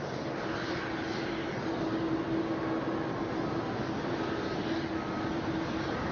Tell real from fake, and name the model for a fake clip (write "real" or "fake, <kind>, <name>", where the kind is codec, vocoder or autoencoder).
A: real